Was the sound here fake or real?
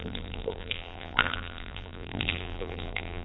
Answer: fake